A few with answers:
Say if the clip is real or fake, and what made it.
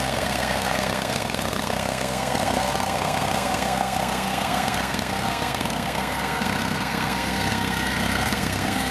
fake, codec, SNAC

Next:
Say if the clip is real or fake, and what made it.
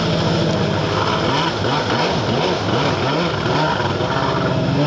real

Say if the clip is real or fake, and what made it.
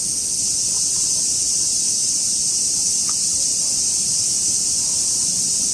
real